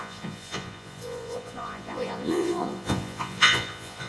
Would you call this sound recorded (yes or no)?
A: no